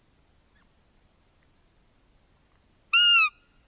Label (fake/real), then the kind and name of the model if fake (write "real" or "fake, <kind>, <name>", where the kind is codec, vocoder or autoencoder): real